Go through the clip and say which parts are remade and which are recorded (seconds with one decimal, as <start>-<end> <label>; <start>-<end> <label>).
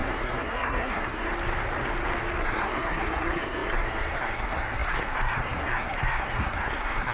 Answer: 0.0-1.3 remade; 1.3-2.4 recorded; 2.4-7.1 remade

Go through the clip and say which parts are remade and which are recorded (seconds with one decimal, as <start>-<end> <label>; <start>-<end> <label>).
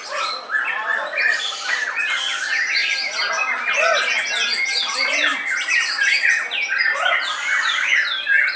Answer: 0.0-8.6 recorded